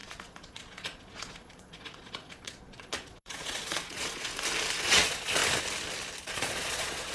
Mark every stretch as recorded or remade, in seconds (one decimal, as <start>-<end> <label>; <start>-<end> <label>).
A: 0.0-4.3 remade; 4.3-4.8 recorded; 4.8-5.4 remade; 5.4-6.3 recorded; 6.3-7.1 remade